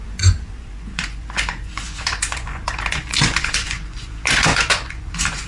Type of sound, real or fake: fake